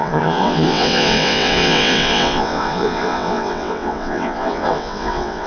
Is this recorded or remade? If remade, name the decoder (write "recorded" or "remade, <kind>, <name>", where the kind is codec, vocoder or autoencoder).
remade, vocoder, WaveNeXt